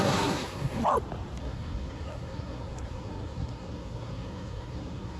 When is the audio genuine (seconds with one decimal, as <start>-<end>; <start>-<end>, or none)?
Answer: 0.8-1.4